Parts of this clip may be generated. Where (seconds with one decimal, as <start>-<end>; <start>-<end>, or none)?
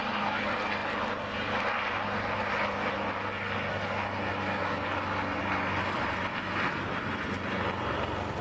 none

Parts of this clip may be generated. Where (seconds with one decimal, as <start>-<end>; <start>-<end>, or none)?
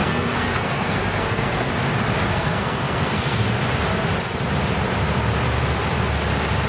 0.0-1.7; 2.2-3.4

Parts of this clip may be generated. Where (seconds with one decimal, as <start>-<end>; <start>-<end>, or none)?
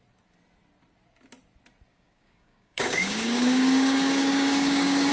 1.9-5.1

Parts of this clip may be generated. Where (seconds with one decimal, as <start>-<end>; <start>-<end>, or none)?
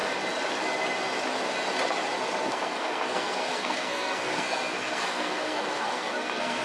2.5-6.6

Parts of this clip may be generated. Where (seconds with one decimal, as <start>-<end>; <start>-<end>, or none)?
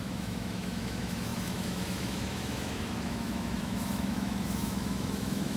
0.0-5.6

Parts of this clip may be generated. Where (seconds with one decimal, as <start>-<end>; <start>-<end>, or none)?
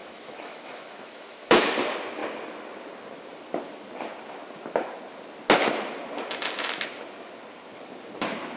0.0-1.7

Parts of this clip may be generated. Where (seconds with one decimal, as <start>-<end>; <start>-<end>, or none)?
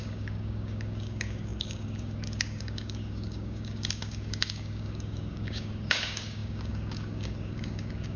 0.0-8.2